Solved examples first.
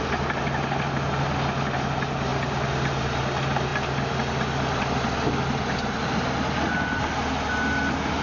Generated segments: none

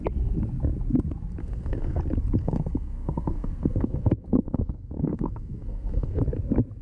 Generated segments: 1.4-2.0 (codec, SNAC); 2.4-6.2

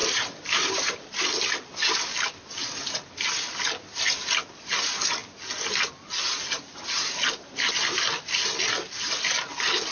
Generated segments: 0.0-1.2 (vocoder, BigVGAN v2)

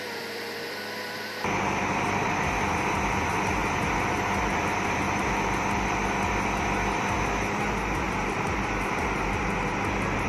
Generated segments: 3.6-4.4 (vocoder, BigVGAN v2)

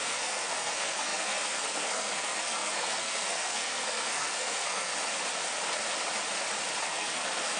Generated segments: 0.0-4.9 (codec, SNAC); 6.8-7.6

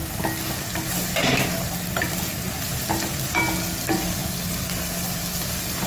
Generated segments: 2.7-3.4 (vocoder, BigVGAN v2)

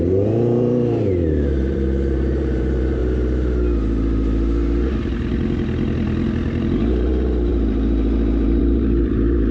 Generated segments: 0.0-3.0 (vocoder, BigVGAN v2); 6.6-9.5